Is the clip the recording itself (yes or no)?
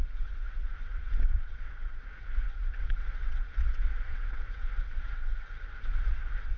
no